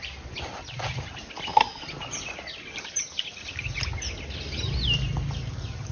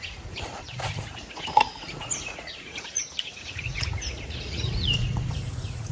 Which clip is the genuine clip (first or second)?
first